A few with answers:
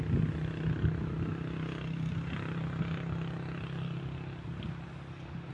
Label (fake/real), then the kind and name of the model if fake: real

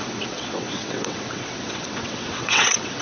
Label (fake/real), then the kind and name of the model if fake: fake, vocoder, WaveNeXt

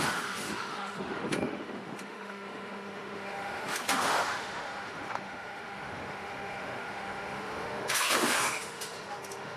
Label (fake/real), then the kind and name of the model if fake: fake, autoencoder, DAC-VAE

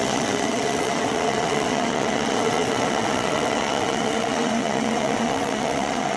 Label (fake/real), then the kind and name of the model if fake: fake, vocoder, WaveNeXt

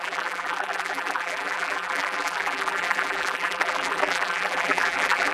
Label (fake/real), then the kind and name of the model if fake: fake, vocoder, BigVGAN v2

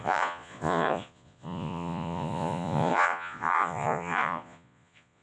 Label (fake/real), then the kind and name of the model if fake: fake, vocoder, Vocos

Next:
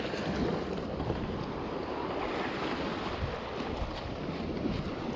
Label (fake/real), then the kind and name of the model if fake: real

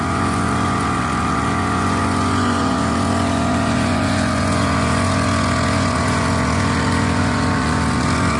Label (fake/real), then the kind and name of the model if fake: fake, vocoder, Vocos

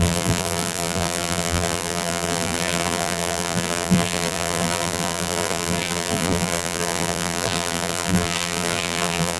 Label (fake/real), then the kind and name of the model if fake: fake, vocoder, BigVGAN v2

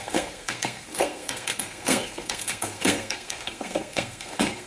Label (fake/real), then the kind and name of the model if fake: fake, codec, SNAC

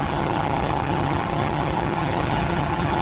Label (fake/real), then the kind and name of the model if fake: fake, vocoder, HiFi-GAN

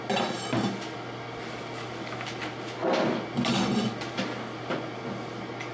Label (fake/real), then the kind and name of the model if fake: real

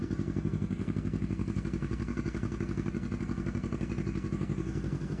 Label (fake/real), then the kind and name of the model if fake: fake, codec, SNAC